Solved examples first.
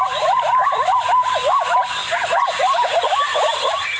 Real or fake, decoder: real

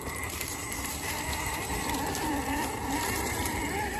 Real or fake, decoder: fake, vocoder, BigVGAN v2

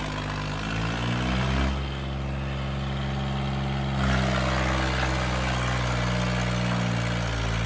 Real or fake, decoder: real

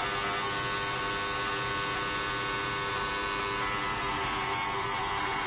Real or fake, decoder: real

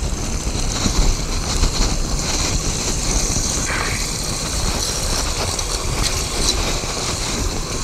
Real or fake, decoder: real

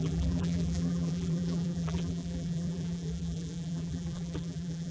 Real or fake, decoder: fake, vocoder, BigVGAN v2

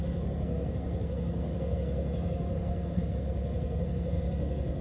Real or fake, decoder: fake, codec, SNAC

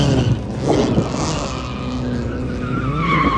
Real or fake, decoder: real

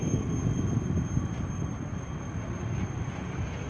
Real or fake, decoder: real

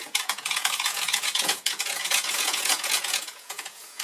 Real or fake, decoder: fake, vocoder, Vocos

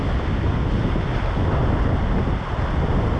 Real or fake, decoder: real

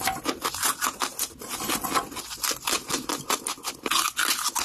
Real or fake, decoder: real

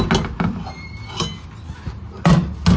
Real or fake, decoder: real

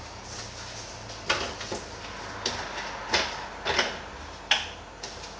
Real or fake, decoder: real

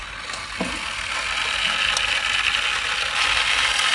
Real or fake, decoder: real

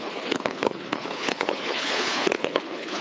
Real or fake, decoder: fake, codec, HILCodec